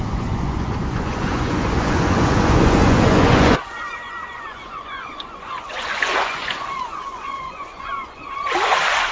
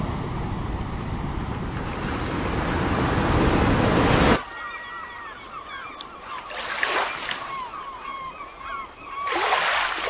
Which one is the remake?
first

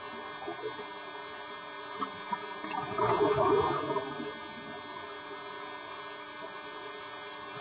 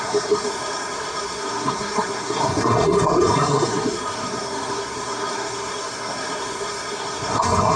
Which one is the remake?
second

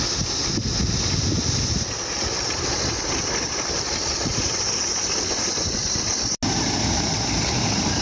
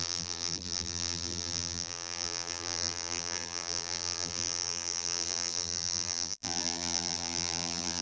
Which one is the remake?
second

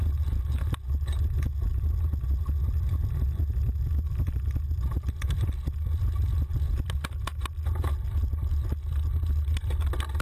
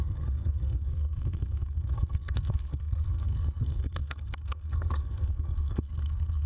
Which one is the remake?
second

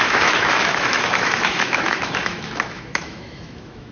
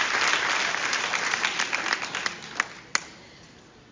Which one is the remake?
first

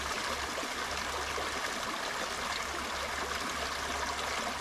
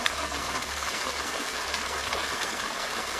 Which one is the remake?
second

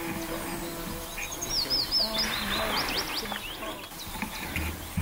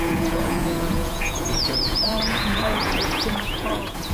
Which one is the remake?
second